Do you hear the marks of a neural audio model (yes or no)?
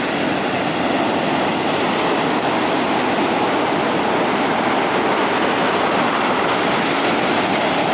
no